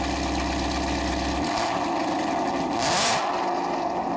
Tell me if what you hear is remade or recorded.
recorded